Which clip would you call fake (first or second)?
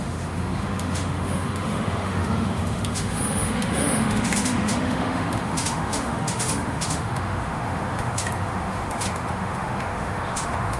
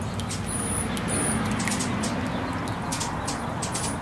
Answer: first